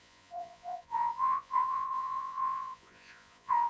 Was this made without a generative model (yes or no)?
no